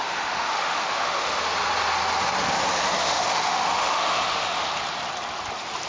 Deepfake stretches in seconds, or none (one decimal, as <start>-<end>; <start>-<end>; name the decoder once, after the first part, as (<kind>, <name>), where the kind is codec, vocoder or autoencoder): 0.0-1.4 (autoencoder, DAC-VAE); 3.0-4.6